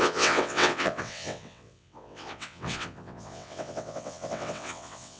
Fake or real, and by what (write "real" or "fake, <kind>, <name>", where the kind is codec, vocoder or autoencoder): fake, vocoder, WaveNeXt